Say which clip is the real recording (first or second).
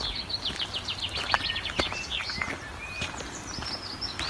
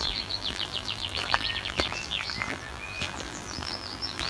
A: first